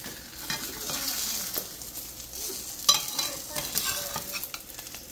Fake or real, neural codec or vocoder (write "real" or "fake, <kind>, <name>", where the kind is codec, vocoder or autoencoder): real